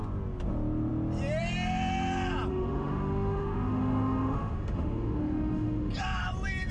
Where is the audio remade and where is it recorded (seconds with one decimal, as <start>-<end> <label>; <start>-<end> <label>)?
0.0-2.5 recorded; 2.5-5.9 remade; 5.9-6.7 recorded